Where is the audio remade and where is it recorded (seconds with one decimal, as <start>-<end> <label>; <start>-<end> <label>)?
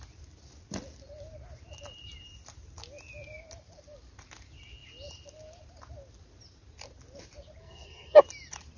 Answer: 0.0-7.6 recorded; 7.6-8.2 remade; 8.2-8.8 recorded